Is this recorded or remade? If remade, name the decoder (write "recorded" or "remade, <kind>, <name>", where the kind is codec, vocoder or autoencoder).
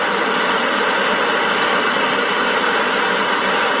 recorded